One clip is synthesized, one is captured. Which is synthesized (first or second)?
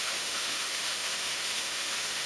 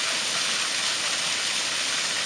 first